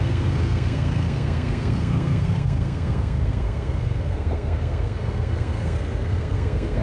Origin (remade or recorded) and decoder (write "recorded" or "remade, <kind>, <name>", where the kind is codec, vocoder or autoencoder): remade, codec, SNAC